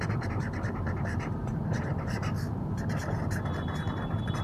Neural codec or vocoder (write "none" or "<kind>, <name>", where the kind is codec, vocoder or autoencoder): vocoder, BigVGAN v2